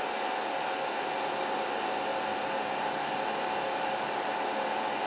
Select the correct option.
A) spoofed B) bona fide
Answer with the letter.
B